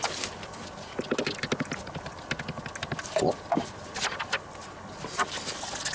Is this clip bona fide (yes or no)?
yes